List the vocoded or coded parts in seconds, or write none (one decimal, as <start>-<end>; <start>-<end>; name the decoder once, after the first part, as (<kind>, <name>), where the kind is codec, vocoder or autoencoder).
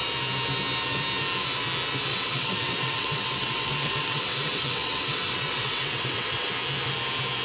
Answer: 2.1-6.5 (vocoder, WaveNeXt)